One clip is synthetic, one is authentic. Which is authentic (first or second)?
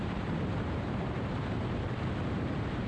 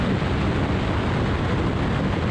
second